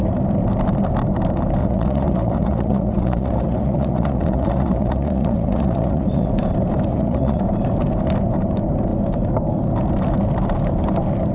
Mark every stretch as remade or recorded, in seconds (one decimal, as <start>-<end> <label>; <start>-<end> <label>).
0.0-1.6 recorded; 1.6-6.3 remade; 6.3-6.9 recorded; 6.9-7.4 remade; 7.4-11.3 recorded